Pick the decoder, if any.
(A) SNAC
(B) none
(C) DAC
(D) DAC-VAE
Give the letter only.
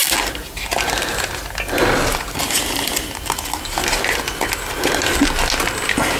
B